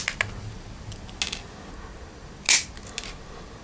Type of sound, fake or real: real